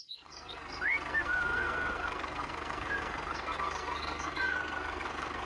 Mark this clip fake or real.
fake